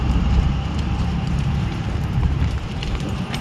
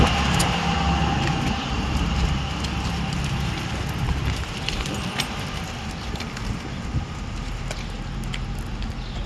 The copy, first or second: first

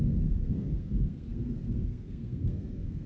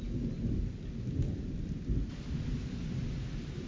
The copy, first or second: first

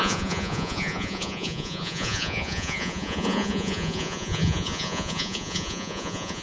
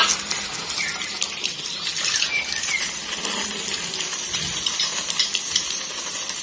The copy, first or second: first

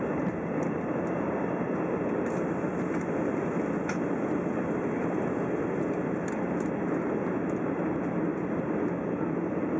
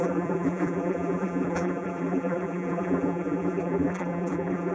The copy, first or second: second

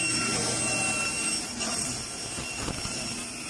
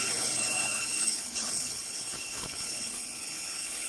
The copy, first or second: second